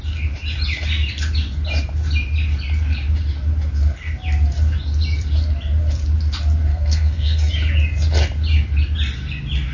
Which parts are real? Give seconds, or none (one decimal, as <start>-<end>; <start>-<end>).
0.0-6.7; 7.5-9.7